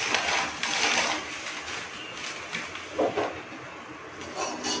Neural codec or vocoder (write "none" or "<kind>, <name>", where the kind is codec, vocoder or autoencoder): none